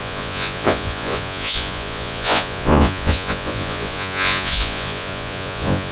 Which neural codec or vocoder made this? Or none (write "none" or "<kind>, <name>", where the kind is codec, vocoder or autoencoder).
vocoder, Vocos